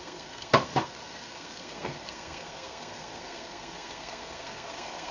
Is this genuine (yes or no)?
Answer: no